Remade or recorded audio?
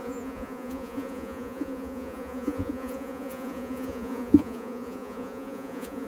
remade